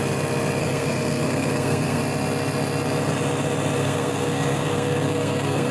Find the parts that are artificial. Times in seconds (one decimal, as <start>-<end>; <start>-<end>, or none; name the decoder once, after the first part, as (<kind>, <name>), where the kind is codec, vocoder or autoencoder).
0.6-2.0 (codec, SNAC); 3.8-5.7